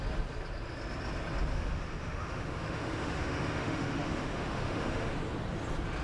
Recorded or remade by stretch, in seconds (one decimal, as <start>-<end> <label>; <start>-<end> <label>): 0.0-1.5 recorded; 1.5-5.1 remade; 5.1-6.0 recorded

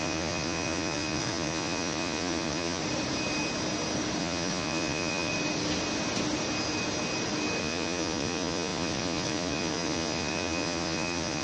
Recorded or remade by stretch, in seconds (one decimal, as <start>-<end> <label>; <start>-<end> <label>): 0.0-2.8 remade; 2.8-4.2 recorded; 4.2-5.3 remade; 5.3-7.6 recorded; 7.6-11.4 remade

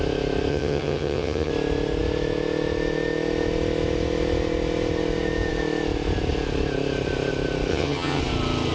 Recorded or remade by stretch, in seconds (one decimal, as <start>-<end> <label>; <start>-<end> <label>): 0.0-0.5 recorded; 0.5-1.5 remade; 1.5-7.7 recorded; 7.7-8.2 remade; 8.2-8.7 recorded

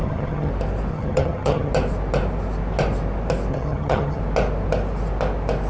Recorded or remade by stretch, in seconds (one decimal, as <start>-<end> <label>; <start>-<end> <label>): 0.0-0.5 remade; 0.5-0.9 recorded; 0.9-1.7 remade; 1.7-3.5 recorded; 3.5-4.2 remade; 4.2-5.7 recorded

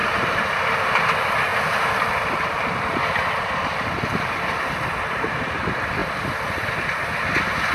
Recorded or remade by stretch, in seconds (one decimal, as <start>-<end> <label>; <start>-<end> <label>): 0.0-7.7 recorded

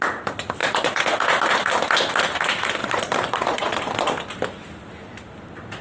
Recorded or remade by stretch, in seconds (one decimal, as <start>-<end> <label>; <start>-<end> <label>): 0.0-0.6 recorded; 0.6-1.4 remade; 1.4-2.8 recorded; 2.8-3.8 remade; 3.8-5.8 recorded